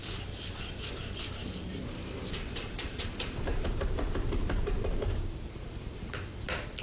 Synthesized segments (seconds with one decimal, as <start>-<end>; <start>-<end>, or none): 2.6-6.1